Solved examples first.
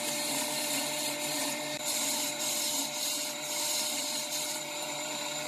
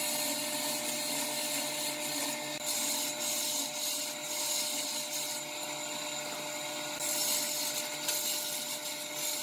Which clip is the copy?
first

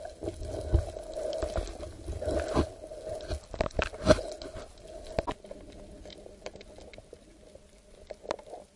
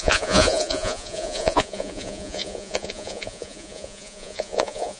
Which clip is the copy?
second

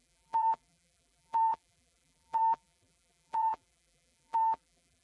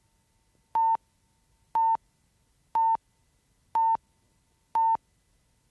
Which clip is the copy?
first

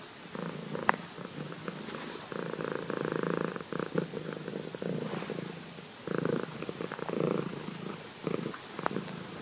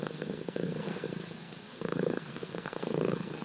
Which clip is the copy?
second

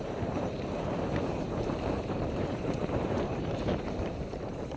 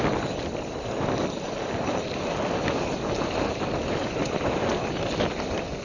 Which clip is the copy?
first